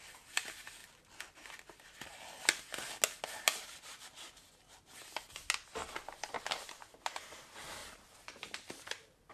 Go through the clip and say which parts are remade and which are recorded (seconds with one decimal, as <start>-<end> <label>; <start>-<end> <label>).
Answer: 0.0-5.8 recorded; 5.8-6.4 remade; 6.4-7.8 recorded; 7.8-9.3 remade